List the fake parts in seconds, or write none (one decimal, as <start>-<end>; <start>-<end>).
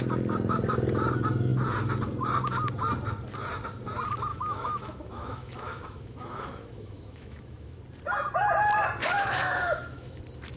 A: 4.3-7.8; 9.0-10.2